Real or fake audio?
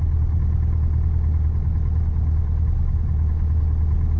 real